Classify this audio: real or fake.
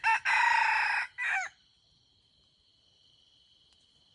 real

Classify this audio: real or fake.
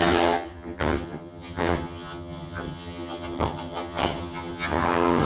fake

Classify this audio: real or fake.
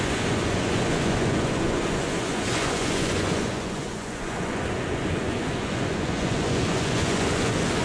fake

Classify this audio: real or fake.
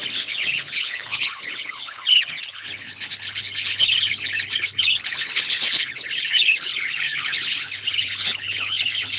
fake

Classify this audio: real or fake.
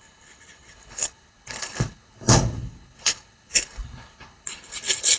fake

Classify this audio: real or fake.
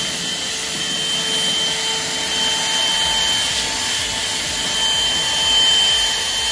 real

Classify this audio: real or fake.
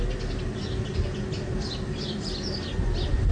real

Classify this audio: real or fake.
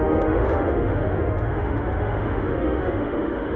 fake